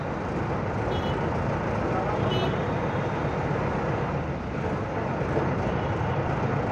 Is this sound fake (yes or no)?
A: no